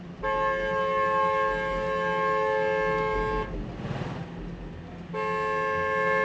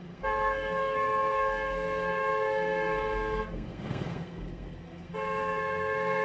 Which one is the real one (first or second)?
first